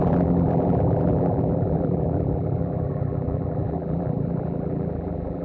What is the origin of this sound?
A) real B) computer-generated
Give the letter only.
B